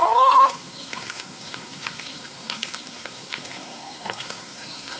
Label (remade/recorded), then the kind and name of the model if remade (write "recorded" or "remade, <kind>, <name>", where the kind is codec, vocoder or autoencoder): remade, codec, SNAC